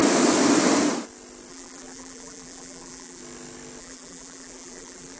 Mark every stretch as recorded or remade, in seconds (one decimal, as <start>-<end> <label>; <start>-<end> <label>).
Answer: 0.0-1.5 recorded; 1.5-3.2 remade; 3.2-3.8 recorded; 3.8-5.2 remade